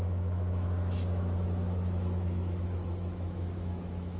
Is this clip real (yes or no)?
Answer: no